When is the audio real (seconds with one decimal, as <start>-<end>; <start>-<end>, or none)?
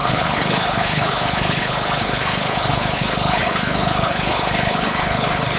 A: none